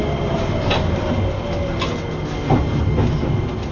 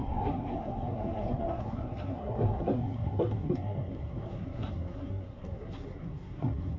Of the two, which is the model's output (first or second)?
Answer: second